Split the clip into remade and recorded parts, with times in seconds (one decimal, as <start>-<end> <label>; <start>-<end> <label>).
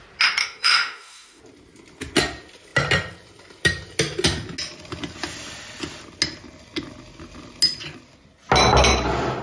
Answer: 0.0-0.4 recorded; 0.4-1.4 remade; 1.4-9.4 recorded